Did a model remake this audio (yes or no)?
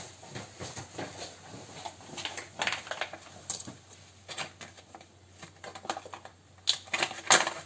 no